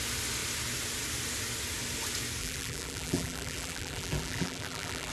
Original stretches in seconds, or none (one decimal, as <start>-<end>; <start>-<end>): 0.0-2.4